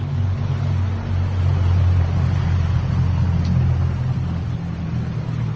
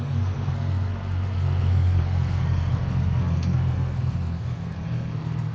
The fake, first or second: second